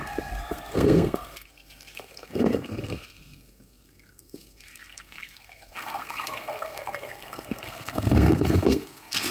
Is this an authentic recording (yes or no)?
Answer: no